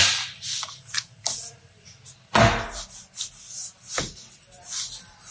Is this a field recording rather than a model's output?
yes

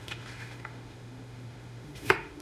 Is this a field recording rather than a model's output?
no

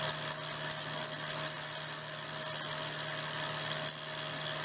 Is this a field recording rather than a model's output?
yes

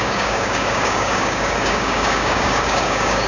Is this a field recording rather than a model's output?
no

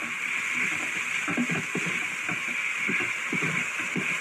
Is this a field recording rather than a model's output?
yes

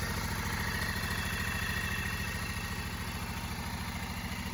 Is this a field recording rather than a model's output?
yes